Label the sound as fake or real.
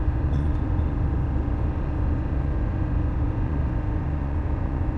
fake